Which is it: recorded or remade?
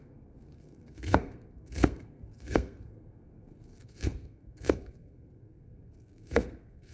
remade